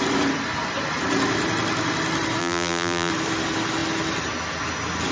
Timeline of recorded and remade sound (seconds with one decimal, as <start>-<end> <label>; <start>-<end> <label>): 0.0-2.4 recorded; 2.4-3.1 remade; 3.1-5.1 recorded